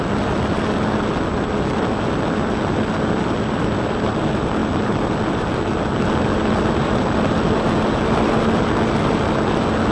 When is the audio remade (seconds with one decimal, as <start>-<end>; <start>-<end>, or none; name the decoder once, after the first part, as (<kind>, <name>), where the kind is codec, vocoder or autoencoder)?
none